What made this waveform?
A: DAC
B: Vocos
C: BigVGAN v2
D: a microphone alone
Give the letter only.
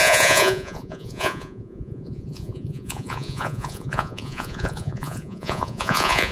B